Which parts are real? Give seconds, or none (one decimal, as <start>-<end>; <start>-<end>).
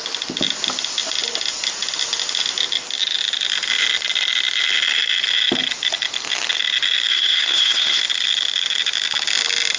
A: 0.0-7.1; 8.0-9.8